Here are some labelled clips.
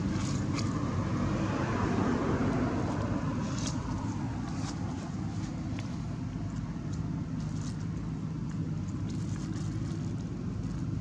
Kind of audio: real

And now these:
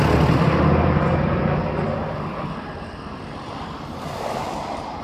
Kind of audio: real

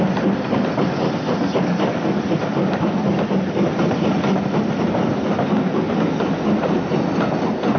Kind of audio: real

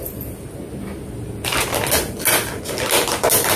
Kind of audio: real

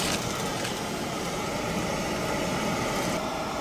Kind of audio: real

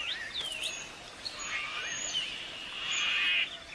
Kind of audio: real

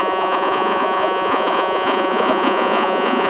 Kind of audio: fake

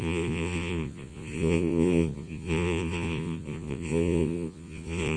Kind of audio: fake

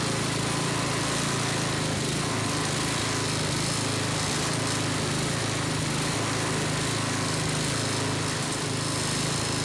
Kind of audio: real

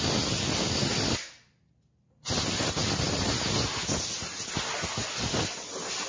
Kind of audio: real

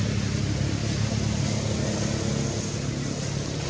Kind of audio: real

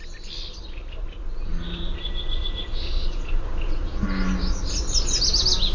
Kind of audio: real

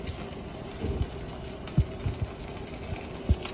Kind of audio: real